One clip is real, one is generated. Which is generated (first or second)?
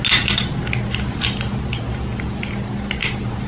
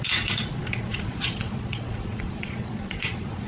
second